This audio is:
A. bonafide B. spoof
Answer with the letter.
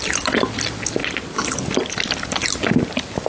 A